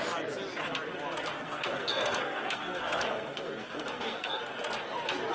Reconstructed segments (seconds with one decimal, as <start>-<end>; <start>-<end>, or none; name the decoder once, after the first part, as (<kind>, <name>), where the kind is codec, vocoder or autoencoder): 1.3-4.4 (codec, SNAC)